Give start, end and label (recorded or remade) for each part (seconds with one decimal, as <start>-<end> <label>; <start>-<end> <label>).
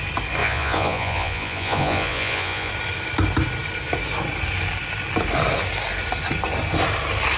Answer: 0.0-0.4 recorded; 0.4-2.7 remade; 2.7-7.4 recorded